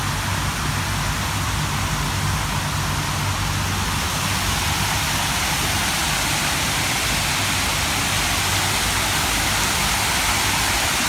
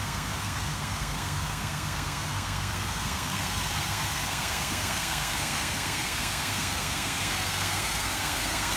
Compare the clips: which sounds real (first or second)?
first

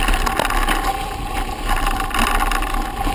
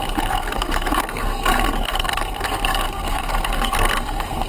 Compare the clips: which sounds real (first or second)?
first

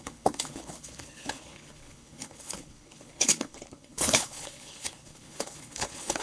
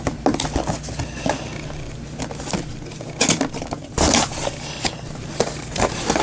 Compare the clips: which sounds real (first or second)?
second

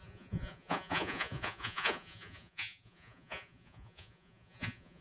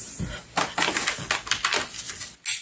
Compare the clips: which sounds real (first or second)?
second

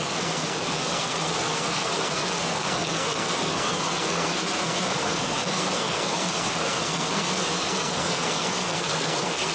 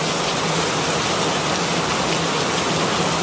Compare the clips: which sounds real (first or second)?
second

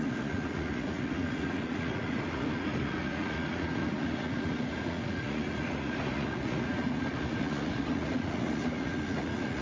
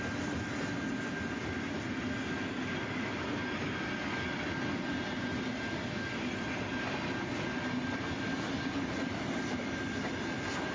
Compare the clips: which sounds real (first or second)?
second